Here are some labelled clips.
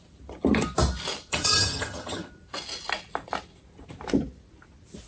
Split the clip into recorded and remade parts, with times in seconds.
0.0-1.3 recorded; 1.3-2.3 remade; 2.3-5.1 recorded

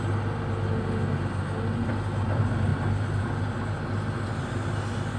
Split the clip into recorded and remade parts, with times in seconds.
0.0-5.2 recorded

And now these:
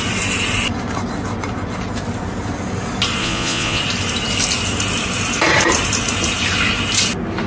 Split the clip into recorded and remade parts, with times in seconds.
0.0-3.2 recorded; 3.2-3.8 remade; 3.8-7.5 recorded